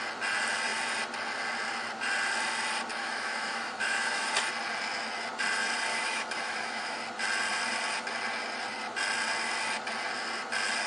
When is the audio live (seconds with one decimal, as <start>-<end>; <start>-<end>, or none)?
0.0-2.9; 4.4-5.9; 7.0-10.9